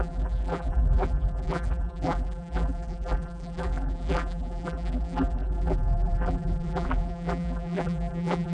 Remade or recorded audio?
remade